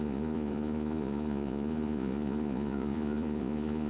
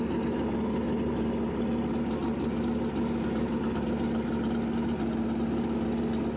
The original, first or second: second